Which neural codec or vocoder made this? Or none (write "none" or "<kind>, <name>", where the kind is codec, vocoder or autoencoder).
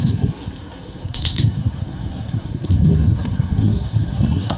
codec, SNAC